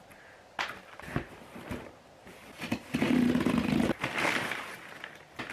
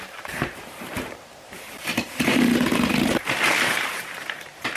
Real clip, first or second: first